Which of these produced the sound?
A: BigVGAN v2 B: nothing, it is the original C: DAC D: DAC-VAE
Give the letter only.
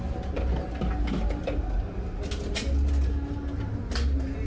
B